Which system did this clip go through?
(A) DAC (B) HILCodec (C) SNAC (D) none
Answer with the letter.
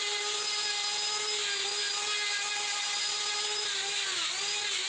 D